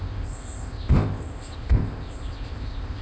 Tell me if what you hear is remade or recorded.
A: remade